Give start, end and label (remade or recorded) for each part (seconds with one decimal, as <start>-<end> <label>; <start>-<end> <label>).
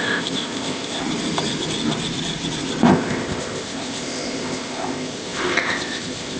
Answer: 0.0-1.0 remade; 1.0-2.9 recorded; 2.9-6.4 remade